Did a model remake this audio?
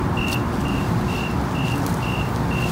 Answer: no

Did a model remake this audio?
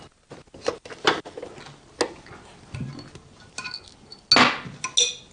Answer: no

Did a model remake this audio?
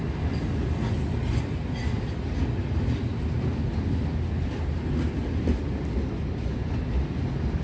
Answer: no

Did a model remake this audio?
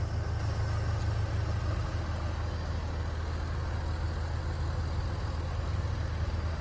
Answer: no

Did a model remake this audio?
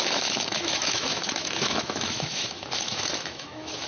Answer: yes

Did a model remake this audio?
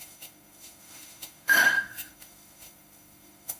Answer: yes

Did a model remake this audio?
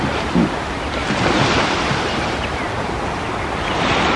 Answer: no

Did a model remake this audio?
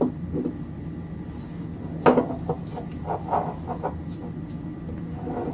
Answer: no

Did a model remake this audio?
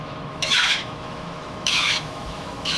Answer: yes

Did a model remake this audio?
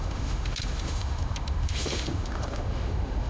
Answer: yes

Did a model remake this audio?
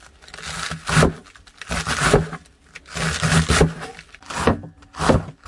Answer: no